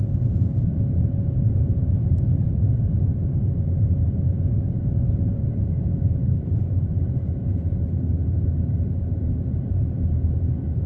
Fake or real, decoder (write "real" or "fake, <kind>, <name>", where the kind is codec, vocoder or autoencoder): fake, vocoder, BigVGAN v2